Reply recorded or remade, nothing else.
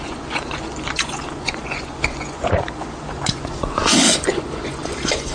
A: remade